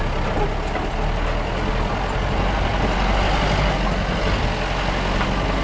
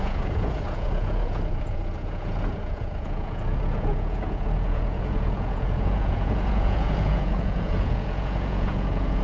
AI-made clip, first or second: second